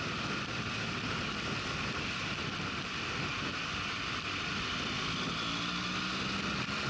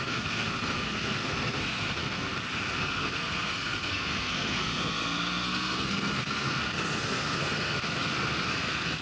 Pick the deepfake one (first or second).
second